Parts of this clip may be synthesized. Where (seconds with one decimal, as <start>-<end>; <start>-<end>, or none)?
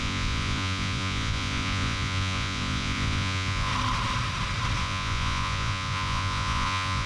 0.0-3.7; 4.8-7.1